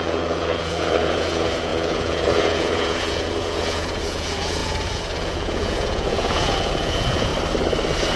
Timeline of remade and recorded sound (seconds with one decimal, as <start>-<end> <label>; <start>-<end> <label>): 0.0-7.3 remade; 7.3-8.2 recorded